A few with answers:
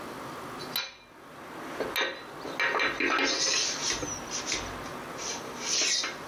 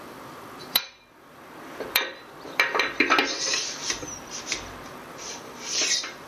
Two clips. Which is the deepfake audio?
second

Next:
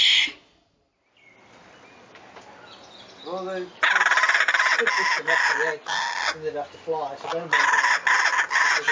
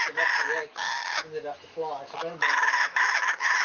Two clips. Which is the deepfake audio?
second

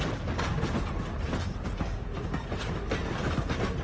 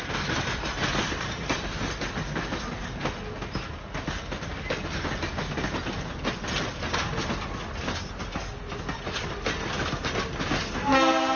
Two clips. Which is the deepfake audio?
first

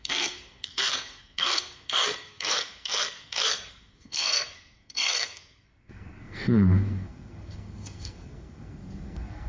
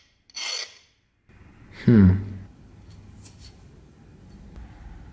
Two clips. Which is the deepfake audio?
first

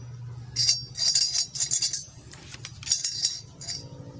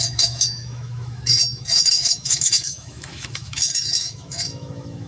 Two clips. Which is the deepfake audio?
second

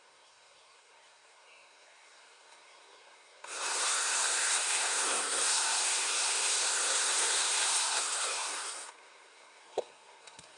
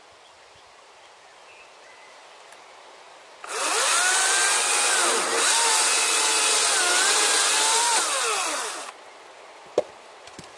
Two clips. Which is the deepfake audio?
first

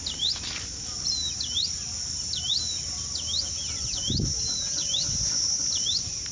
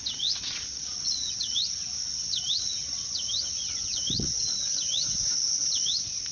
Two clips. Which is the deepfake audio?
second